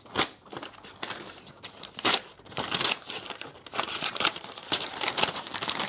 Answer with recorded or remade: remade